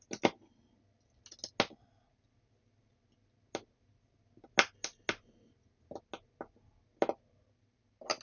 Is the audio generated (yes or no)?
no